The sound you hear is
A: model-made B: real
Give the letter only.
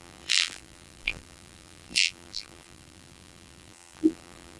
A